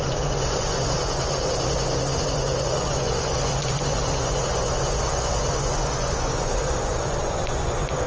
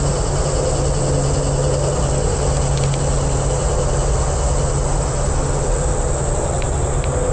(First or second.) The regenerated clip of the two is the first